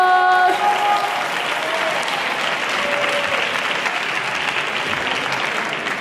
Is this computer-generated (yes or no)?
no